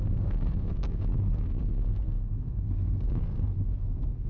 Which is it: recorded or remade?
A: remade